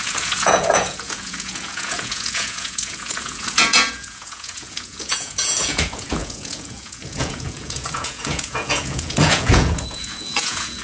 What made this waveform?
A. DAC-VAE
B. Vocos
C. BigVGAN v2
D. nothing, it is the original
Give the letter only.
B